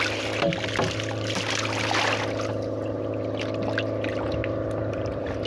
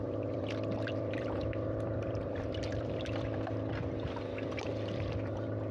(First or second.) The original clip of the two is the first